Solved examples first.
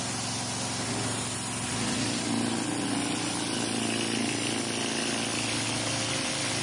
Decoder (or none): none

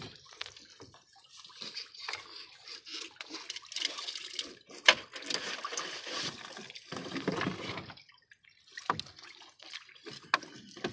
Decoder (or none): none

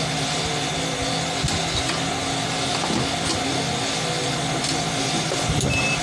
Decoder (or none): none